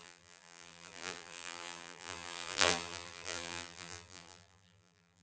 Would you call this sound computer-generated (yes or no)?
yes